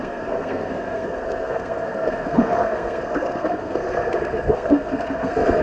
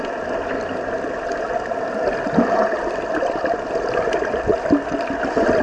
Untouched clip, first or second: second